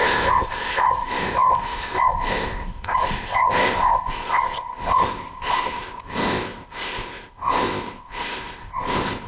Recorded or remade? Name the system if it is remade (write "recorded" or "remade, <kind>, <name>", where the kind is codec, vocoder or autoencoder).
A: remade, codec, ZipCodec